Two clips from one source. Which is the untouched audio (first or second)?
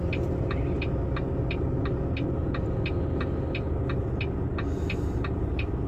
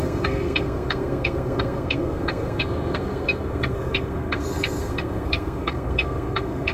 first